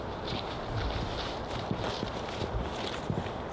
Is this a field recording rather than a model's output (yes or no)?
yes